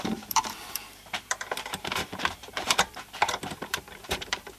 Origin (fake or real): fake